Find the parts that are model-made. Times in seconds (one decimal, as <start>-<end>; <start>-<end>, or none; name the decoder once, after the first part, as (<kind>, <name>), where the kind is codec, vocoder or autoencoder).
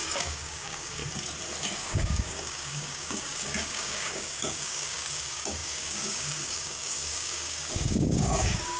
0.0-1.0 (codec, DAC); 1.8-8.8